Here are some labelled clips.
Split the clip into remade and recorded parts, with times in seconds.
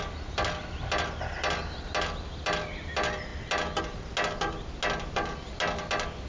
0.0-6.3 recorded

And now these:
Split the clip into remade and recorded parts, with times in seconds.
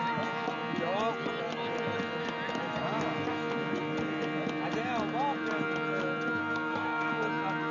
0.0-6.4 recorded; 6.4-7.1 remade; 7.1-7.7 recorded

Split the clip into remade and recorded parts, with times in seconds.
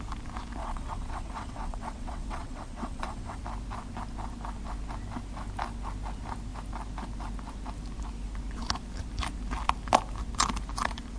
0.0-0.6 recorded; 0.6-3.4 remade; 3.4-11.2 recorded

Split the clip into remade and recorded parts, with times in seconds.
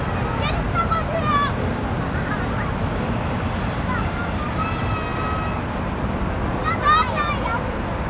0.0-8.1 recorded